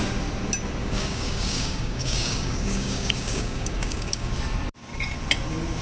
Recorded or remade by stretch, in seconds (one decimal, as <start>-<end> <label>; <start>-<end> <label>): 0.0-0.8 recorded; 0.8-4.3 remade; 4.3-5.8 recorded